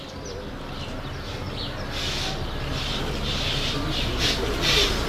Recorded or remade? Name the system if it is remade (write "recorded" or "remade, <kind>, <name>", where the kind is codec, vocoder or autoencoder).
recorded